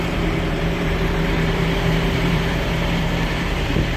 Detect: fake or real fake